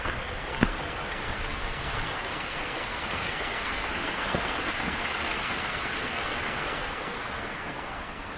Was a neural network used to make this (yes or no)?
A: yes